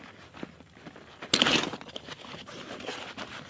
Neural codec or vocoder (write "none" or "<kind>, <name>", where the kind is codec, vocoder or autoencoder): none